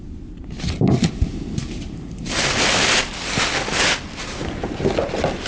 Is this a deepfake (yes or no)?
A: no